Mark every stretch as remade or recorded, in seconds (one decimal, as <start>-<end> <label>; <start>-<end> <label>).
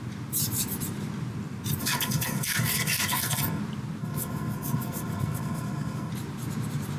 0.0-1.8 recorded; 1.8-3.6 remade; 3.6-4.0 recorded; 4.0-6.1 remade; 6.1-7.0 recorded